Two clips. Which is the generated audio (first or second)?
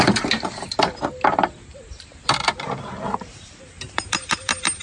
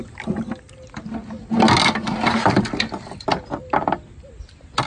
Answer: first